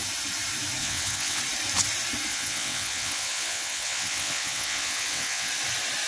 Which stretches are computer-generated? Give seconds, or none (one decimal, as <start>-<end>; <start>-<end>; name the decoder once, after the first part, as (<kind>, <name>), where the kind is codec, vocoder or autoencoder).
0.8-1.4 (vocoder, WaveNeXt); 2.3-5.5